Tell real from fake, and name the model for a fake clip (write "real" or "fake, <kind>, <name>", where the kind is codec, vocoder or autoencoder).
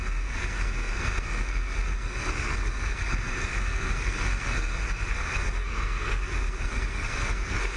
fake, codec, SNAC